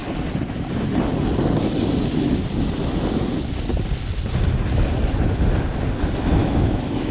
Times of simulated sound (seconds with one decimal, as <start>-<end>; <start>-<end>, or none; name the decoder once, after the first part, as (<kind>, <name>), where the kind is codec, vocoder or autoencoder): 6.4-7.1 (autoencoder, DAC-VAE)